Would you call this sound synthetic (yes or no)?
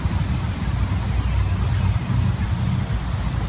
no